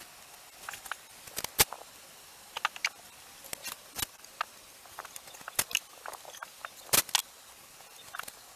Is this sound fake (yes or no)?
no